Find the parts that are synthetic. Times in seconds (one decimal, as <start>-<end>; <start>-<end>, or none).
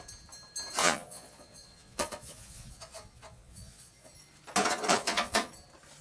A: 0.8-4.1; 4.6-5.5